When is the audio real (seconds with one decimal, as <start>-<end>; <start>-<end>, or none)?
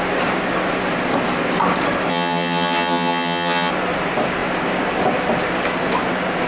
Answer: 0.0-2.1; 3.7-6.5